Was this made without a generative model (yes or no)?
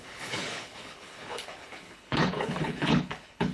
no